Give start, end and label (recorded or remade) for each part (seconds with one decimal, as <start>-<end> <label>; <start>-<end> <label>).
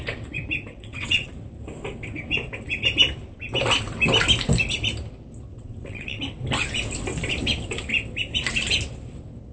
0.0-0.7 recorded; 0.7-1.3 remade; 1.3-5.5 recorded; 5.5-6.2 remade; 6.2-9.5 recorded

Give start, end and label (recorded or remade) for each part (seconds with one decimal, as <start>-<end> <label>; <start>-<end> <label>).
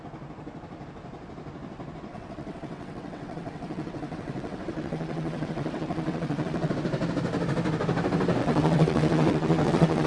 0.0-2.1 recorded; 2.1-6.7 remade; 6.7-8.4 recorded; 8.4-10.1 remade